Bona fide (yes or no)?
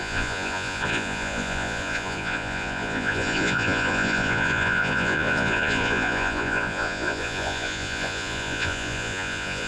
no